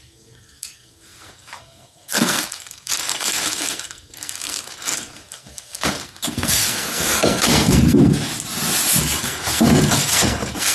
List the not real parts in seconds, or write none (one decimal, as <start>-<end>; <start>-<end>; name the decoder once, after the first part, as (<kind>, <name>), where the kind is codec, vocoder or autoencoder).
0.0-8.3 (codec, SNAC); 9.2-10.7